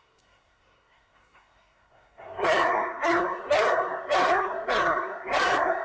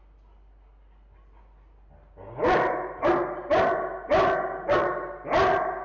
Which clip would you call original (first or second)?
second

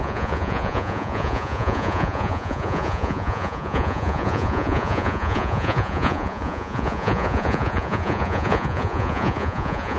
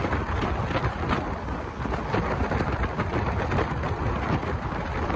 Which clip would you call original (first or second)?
second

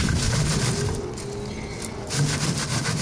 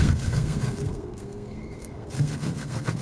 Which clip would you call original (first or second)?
first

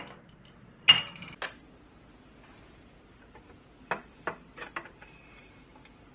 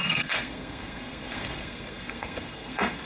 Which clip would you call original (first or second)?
first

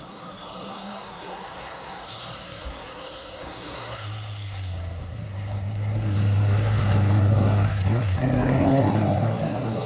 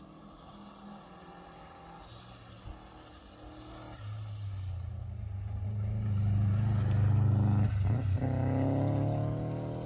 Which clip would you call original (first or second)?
second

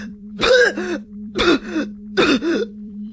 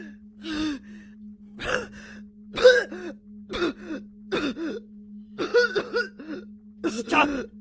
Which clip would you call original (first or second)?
second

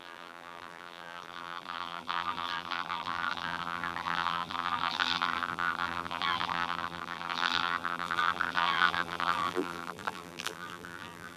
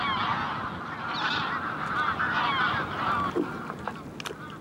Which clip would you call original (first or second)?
second